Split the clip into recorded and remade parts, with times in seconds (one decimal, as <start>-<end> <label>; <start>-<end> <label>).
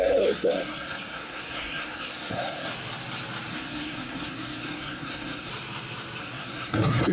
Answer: 0.0-2.7 remade; 2.7-3.5 recorded; 3.5-5.5 remade; 5.5-6.2 recorded; 6.2-7.1 remade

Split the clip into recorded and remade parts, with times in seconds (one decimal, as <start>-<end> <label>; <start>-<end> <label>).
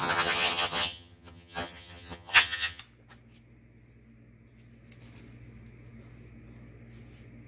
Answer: 0.0-2.8 remade; 2.8-7.5 recorded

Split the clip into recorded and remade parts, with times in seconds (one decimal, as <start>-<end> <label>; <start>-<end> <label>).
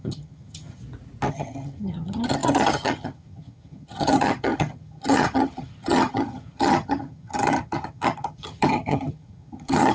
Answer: 0.0-0.8 remade; 0.8-1.3 recorded; 1.3-9.9 remade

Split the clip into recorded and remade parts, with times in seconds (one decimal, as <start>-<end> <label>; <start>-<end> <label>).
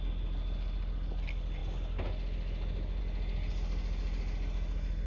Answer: 0.0-5.1 recorded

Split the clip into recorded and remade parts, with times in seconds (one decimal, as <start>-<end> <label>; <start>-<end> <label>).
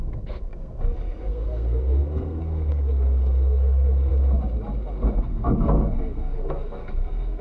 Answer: 0.0-4.1 remade; 4.1-5.2 recorded; 5.2-7.4 remade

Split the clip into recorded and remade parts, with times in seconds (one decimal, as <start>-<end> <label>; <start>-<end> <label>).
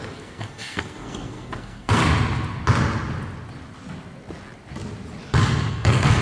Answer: 0.0-2.0 remade; 2.0-5.7 recorded; 5.7-6.2 remade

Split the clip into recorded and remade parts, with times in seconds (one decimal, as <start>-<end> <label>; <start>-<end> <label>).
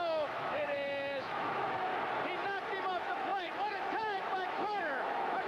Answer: 0.0-1.9 remade; 1.9-2.9 recorded; 2.9-5.5 remade